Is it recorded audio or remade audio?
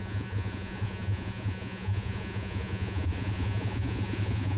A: remade